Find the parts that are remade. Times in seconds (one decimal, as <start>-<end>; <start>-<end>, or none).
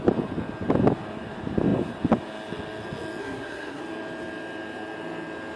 3.2-3.8